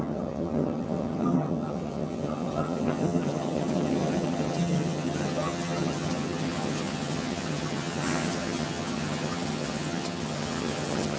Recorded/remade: remade